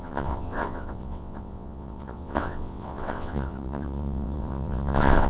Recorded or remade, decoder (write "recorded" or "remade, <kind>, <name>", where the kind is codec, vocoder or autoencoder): remade, vocoder, WaveNeXt